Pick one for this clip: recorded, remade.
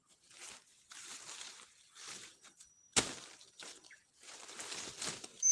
recorded